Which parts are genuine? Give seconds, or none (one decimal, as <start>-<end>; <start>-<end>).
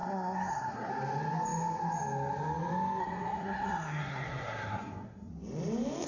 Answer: 0.9-3.0; 5.3-6.1